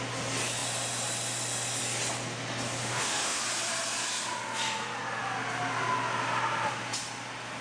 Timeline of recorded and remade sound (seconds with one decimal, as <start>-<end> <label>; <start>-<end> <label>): 0.0-2.8 recorded; 2.8-3.4 remade; 3.4-7.6 recorded

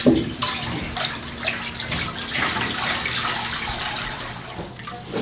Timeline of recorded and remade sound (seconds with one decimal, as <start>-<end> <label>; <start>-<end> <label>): 0.0-5.2 recorded

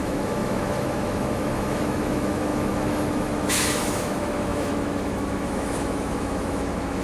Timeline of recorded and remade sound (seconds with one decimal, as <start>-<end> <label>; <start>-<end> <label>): 0.0-7.0 remade

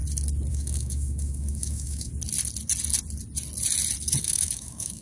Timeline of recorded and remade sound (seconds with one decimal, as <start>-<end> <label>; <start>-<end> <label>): 0.0-0.5 recorded; 0.5-2.1 remade; 2.1-4.2 recorded; 4.2-5.0 remade

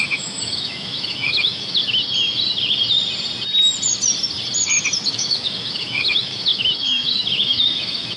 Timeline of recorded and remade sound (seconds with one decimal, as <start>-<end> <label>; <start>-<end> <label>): 0.0-1.8 remade; 1.8-5.1 recorded; 5.1-8.2 remade

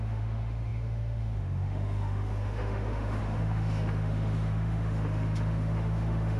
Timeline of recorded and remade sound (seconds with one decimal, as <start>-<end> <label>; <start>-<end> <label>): 0.0-6.4 remade

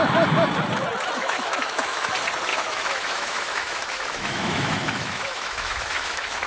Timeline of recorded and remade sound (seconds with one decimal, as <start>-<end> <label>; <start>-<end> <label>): 0.0-1.2 recorded; 1.2-2.1 remade; 2.1-2.5 recorded; 2.5-6.5 remade

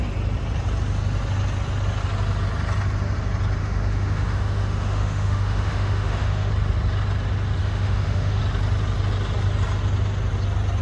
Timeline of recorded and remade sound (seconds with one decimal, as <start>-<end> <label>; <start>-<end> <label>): 0.0-3.6 recorded; 3.6-6.5 remade; 6.5-7.6 recorded; 7.6-8.4 remade; 8.4-10.8 recorded